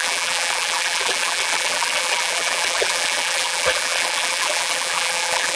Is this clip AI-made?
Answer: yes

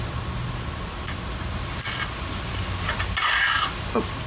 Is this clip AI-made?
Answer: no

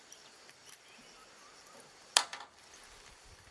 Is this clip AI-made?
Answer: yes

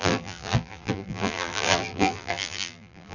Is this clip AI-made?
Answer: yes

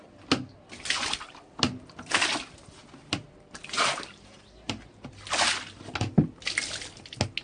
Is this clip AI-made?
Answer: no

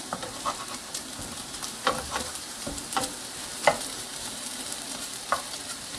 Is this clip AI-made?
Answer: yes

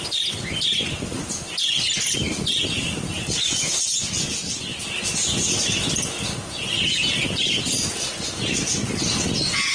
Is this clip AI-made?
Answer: no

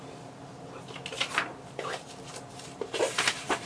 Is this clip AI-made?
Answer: no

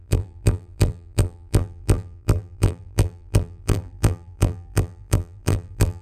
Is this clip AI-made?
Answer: yes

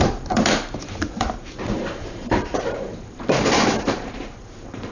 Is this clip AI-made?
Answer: yes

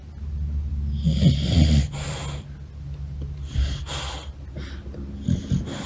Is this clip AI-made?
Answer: no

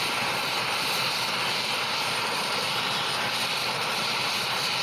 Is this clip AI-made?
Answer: no